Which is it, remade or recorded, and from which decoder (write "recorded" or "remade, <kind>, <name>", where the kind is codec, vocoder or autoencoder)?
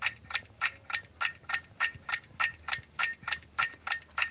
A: recorded